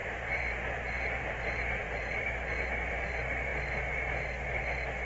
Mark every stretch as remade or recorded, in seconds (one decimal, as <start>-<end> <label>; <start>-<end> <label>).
0.0-3.1 remade; 3.1-5.1 recorded